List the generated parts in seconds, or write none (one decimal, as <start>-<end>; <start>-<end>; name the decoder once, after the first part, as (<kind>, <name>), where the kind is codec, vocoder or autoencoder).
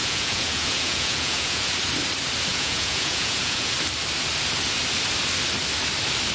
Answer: 0.0-1.7 (vocoder, Vocos); 2.5-3.7